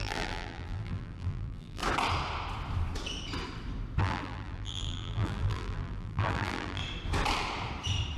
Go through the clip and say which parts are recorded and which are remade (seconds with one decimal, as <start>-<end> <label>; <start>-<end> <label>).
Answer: 0.0-1.8 remade; 1.8-4.0 recorded; 4.0-6.8 remade; 6.8-8.2 recorded